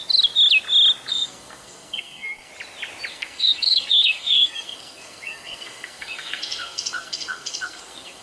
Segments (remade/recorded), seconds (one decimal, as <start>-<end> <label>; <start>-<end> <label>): 0.0-1.1 recorded; 1.1-2.5 remade; 2.5-3.1 recorded; 3.1-8.2 remade